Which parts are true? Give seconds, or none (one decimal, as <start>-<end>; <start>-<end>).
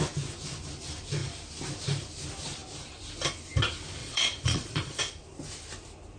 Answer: 0.0-4.0; 5.0-6.2